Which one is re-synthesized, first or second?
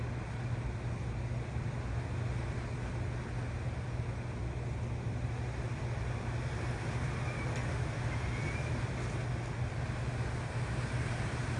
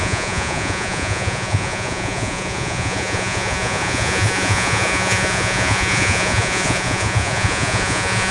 second